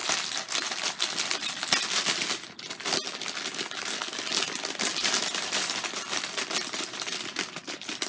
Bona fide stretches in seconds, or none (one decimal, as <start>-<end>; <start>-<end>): 0.0-4.9